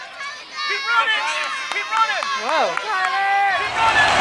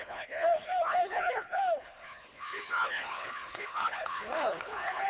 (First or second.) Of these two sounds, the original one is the first